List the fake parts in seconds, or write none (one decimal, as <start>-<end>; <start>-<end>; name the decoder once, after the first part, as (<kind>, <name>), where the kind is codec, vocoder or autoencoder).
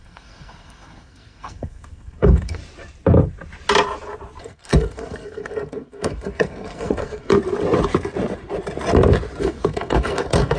0.0-2.6 (codec, SNAC); 4.4-7.3; 9.4-10.6